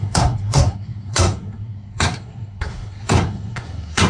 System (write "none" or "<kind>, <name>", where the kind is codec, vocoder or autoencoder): codec, SNAC